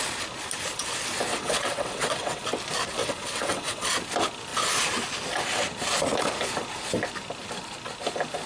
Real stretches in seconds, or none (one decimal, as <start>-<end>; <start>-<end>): 0.0-1.3; 2.4-3.0; 3.9-8.5